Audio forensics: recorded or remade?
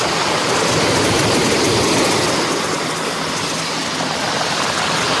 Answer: recorded